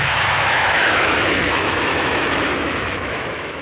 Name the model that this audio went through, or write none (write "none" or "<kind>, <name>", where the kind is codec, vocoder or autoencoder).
autoencoder, DAC-VAE